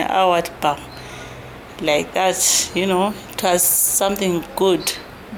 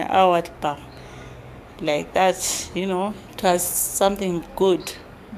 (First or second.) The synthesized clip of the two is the second